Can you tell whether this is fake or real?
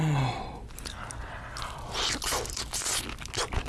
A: real